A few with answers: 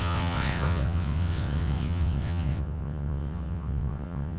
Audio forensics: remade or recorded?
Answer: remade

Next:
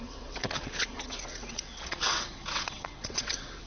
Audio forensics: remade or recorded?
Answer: remade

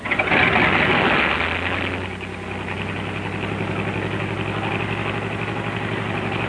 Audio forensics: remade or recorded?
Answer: recorded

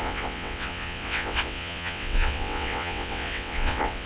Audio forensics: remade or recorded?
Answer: remade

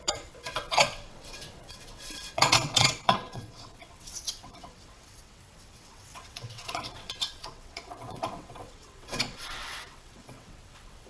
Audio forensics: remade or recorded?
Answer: remade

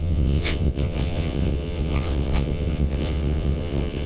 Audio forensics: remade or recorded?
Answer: remade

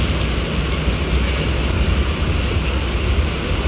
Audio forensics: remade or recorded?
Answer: recorded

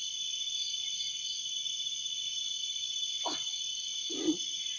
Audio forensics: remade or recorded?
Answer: recorded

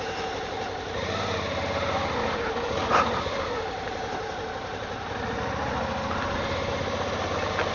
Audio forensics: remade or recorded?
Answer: recorded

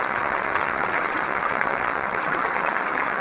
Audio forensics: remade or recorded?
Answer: remade